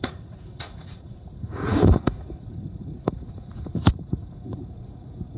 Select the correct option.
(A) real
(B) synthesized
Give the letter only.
B